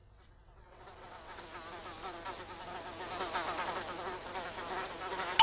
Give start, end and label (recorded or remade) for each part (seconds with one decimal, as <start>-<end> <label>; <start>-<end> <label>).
0.0-1.4 remade; 1.4-5.4 recorded